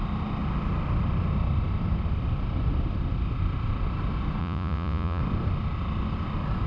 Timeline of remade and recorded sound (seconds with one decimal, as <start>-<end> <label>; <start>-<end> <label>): 0.0-4.4 recorded; 4.4-5.2 remade; 5.2-6.7 recorded